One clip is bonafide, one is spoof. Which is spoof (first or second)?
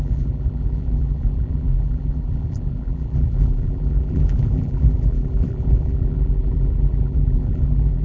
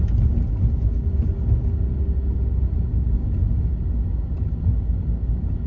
first